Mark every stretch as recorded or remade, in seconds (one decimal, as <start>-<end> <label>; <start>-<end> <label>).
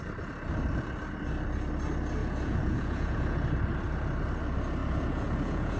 0.0-2.2 recorded; 2.2-3.4 remade; 3.4-4.8 recorded; 4.8-5.8 remade